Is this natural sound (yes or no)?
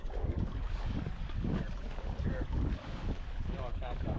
no